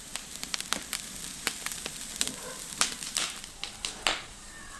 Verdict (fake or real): real